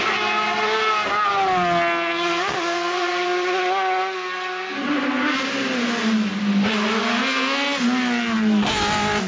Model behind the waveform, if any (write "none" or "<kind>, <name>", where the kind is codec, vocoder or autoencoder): none